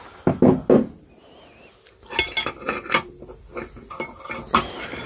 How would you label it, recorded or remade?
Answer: recorded